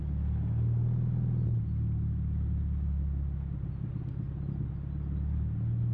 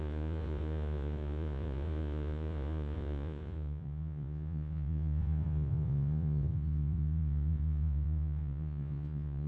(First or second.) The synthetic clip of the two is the second